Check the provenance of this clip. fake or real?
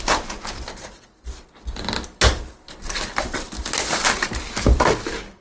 real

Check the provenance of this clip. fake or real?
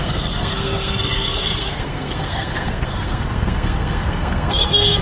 fake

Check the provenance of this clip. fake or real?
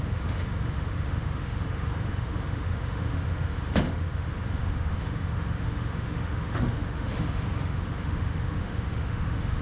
fake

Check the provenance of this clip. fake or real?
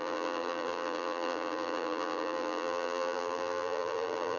fake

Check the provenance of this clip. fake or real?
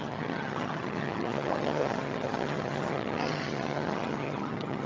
fake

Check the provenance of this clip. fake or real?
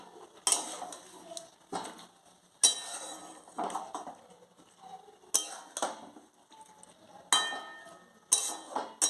real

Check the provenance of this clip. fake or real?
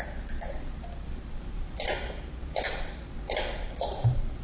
fake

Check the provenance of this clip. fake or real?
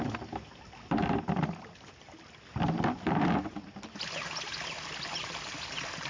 real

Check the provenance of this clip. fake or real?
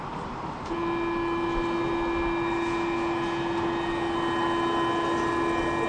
real